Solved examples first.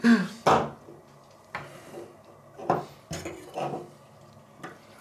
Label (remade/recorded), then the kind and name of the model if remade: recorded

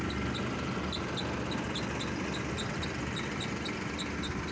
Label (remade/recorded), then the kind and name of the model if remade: recorded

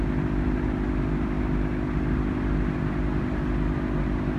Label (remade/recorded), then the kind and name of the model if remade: recorded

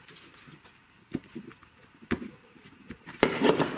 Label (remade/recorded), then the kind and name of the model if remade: remade, vocoder, BigVGAN v2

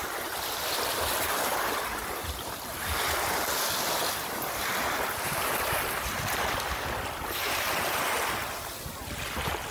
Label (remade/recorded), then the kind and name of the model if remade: remade, vocoder, BigVGAN v2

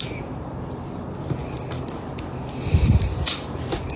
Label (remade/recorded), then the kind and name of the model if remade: recorded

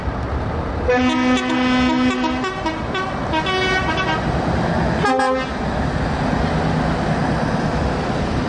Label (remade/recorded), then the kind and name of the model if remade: recorded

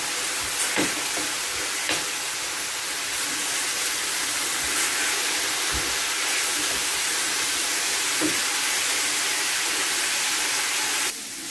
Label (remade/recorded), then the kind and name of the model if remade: recorded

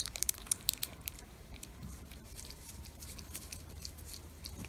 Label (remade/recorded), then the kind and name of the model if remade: remade, vocoder, BigVGAN v2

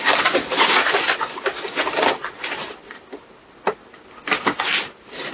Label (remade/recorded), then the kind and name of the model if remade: recorded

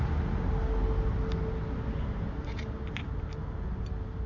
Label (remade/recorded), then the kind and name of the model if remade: recorded